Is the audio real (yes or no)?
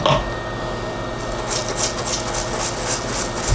yes